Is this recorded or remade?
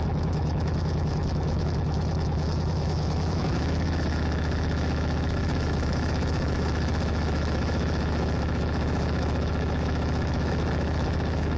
remade